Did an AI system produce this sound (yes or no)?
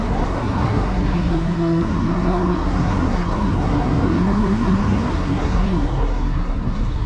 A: yes